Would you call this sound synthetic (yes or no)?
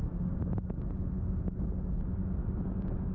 no